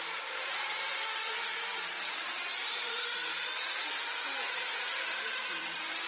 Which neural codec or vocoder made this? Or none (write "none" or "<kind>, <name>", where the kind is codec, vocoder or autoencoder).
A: none